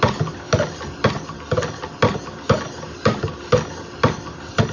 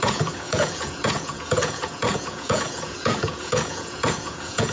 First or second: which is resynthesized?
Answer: second